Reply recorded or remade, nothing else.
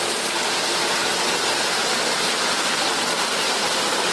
recorded